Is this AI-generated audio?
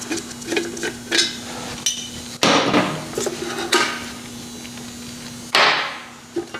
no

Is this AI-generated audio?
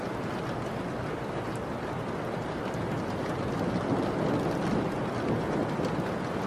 no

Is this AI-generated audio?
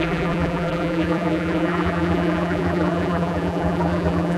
yes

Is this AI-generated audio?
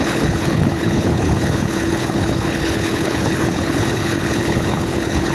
yes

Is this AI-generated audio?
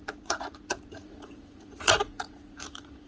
yes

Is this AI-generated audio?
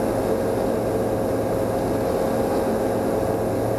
no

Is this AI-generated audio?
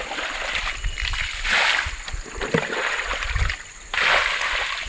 no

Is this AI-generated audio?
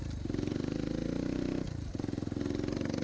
no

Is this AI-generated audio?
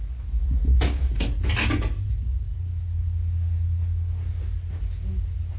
no